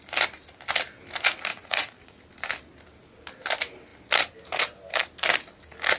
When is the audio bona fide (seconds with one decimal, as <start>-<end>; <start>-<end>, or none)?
0.0-1.5; 2.2-6.0